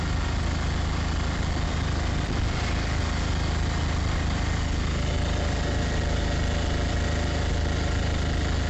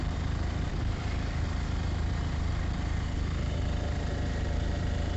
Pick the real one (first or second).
first